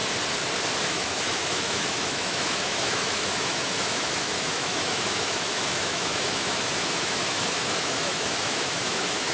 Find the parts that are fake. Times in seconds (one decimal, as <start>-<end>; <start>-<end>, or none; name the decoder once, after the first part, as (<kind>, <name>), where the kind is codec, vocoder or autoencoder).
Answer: 0.9-9.3 (autoencoder, DAC-VAE)